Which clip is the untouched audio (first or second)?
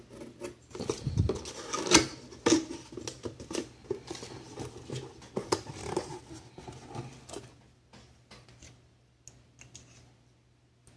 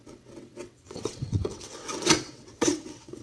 first